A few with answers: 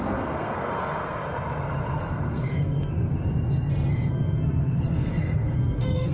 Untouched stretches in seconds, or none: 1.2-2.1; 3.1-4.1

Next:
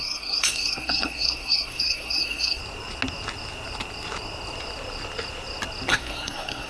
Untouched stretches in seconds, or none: 2.6-5.9